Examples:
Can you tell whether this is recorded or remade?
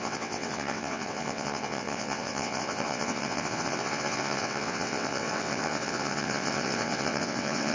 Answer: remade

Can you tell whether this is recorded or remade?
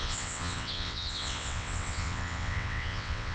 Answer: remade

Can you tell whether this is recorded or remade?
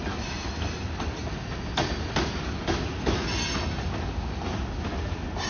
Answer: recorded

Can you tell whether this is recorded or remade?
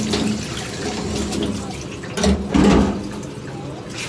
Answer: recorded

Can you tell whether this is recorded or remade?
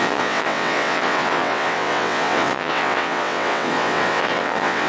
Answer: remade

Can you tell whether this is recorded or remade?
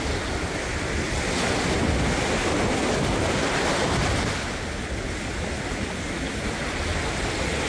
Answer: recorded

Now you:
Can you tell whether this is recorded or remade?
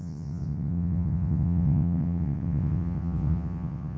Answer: remade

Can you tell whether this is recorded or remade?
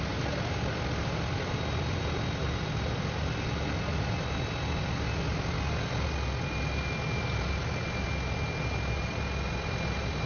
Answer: recorded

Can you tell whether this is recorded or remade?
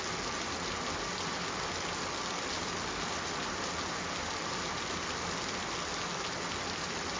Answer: recorded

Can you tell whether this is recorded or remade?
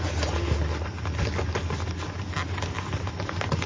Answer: recorded